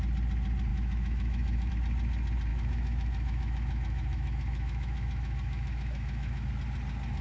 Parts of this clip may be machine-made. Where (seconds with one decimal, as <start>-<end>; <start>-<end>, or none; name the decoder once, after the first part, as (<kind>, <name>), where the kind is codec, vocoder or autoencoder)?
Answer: 0.7-1.7 (autoencoder, DAC-VAE); 2.5-6.5